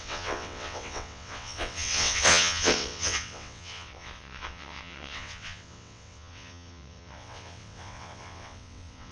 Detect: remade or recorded remade